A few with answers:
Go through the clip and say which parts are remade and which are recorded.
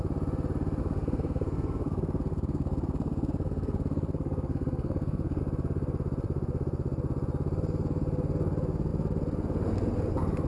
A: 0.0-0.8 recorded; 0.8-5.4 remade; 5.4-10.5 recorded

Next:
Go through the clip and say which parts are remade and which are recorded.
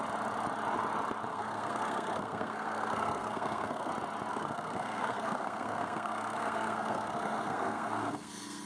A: 0.0-1.3 recorded; 1.3-3.9 remade; 3.9-4.3 recorded; 4.3-8.7 remade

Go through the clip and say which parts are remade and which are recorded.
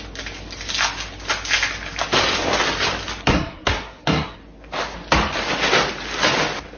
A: 0.0-3.3 recorded; 3.3-4.4 remade; 4.4-6.8 recorded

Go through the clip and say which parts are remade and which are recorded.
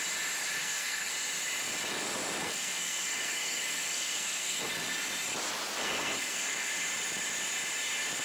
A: 0.0-0.6 recorded; 0.6-1.1 remade; 1.1-2.4 recorded; 2.4-4.6 remade; 4.6-5.8 recorded; 5.8-6.7 remade; 6.7-8.2 recorded